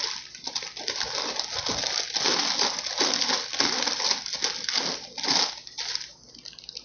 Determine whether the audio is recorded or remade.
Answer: recorded